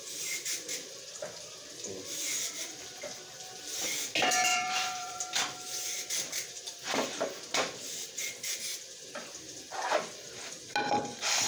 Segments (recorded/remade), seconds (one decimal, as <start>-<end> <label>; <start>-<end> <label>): 0.0-4.5 recorded; 4.5-5.2 remade; 5.2-11.5 recorded